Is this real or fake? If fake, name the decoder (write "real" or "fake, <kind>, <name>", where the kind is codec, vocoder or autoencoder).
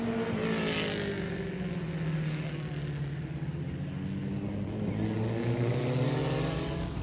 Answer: real